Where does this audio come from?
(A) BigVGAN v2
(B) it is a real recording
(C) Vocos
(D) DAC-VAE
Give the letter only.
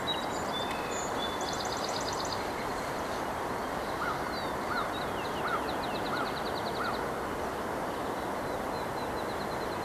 B